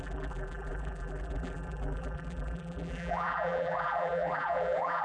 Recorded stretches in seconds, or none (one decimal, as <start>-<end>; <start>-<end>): none